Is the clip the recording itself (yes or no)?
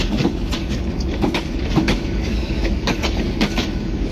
no